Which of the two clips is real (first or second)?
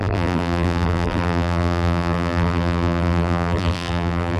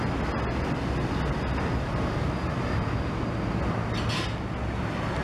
second